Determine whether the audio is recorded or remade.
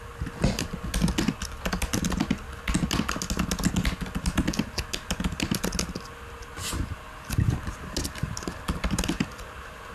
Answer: recorded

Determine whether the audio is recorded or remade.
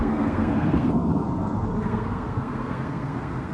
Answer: remade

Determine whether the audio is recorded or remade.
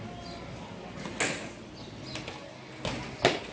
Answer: recorded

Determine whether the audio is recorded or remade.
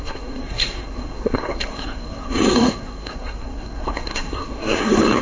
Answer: remade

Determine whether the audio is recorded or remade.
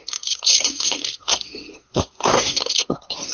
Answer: remade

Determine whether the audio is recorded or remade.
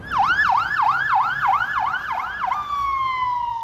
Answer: recorded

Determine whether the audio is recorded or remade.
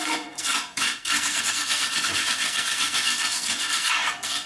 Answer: remade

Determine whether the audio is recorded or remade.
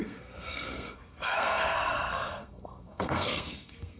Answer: remade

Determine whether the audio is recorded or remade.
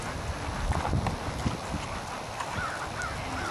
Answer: recorded